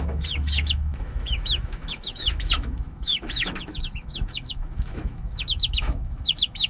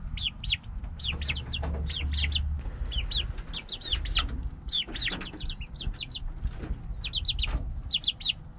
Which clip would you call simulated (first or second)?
first